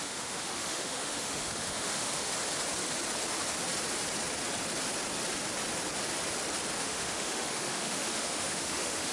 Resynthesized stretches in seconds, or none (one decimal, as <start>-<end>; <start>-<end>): 0.0-2.3; 6.8-9.1